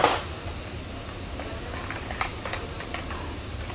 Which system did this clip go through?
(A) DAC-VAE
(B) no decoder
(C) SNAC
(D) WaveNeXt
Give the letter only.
B